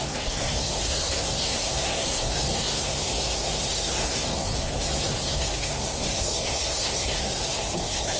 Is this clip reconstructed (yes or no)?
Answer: yes